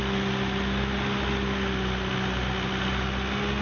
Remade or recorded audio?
recorded